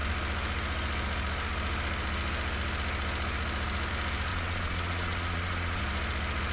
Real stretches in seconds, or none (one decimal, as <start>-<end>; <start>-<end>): 0.0-4.3; 5.8-6.5